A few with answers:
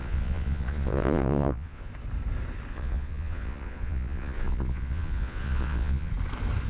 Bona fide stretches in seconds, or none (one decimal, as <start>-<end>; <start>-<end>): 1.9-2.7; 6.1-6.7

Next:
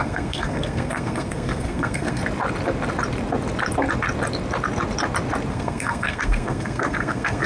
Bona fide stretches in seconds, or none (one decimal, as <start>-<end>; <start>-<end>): 2.2-5.5

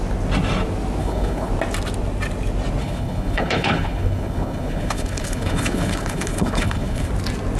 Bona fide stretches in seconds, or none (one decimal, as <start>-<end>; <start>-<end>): 0.0-1.0; 1.5-2.8; 7.1-7.6

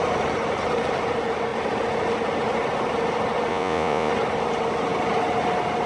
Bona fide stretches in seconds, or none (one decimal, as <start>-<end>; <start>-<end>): 0.0-3.5; 4.1-5.9

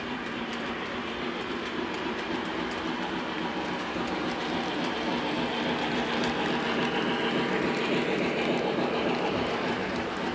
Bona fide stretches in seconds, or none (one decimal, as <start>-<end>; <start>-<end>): 5.1-8.6

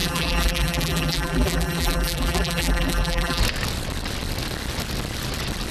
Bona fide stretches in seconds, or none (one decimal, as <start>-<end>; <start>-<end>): 3.4-5.7

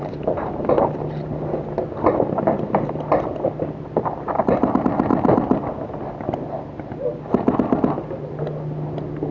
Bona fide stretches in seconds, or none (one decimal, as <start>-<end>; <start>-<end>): 0.0-9.3